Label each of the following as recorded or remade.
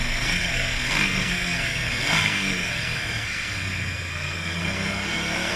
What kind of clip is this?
remade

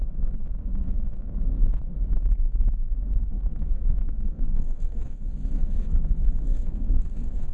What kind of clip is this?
remade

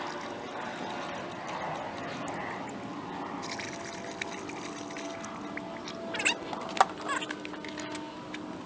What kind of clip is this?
recorded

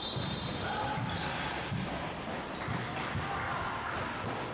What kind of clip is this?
recorded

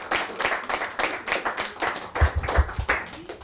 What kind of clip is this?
recorded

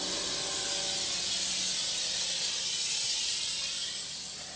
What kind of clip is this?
recorded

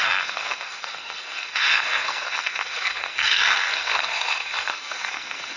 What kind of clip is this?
remade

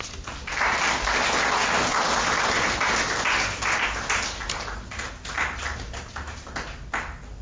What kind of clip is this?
recorded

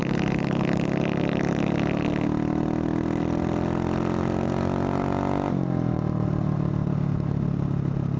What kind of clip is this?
recorded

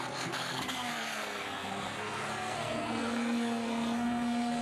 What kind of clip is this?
remade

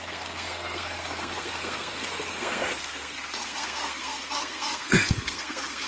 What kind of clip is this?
remade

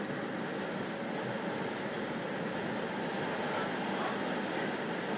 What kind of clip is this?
recorded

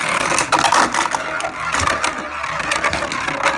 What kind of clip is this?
recorded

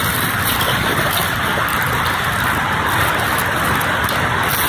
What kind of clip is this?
recorded